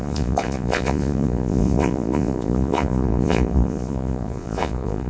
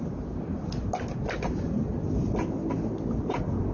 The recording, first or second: second